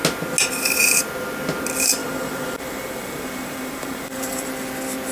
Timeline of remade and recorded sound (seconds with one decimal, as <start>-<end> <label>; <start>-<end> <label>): 0.0-2.0 recorded; 2.0-4.5 remade; 4.5-5.1 recorded